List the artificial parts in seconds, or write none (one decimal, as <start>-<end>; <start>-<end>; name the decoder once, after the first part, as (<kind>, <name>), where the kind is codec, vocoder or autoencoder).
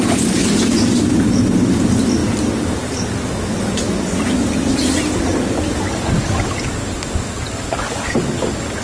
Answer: none